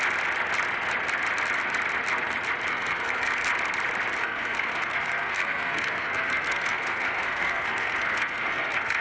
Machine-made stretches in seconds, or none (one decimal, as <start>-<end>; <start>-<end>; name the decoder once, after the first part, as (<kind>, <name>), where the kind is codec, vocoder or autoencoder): 2.7-3.5 (codec, SNAC); 4.2-9.0